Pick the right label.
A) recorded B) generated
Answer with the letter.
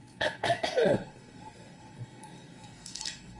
B